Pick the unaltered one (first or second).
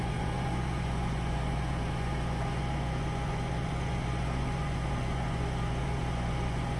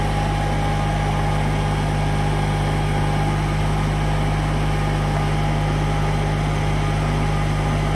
second